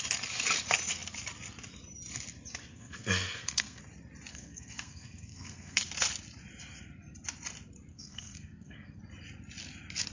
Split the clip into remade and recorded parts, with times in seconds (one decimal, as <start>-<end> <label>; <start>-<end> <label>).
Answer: 0.0-2.7 recorded; 2.7-3.8 remade; 3.8-4.3 recorded; 4.3-5.9 remade; 5.9-7.9 recorded; 7.9-9.0 remade; 9.0-10.1 recorded